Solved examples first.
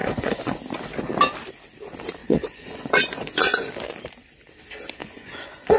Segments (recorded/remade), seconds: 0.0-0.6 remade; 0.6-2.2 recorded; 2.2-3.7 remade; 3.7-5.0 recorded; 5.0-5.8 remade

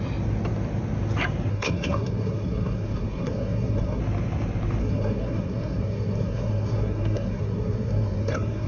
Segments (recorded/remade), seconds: 0.0-1.5 recorded; 1.5-4.0 remade; 4.0-4.8 recorded; 4.8-8.7 remade

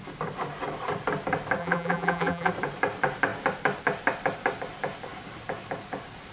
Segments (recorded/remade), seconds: 0.0-1.6 recorded; 1.6-2.5 remade; 2.5-6.3 recorded

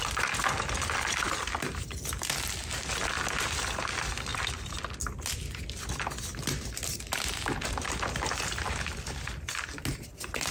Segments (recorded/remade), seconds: 0.0-10.5 recorded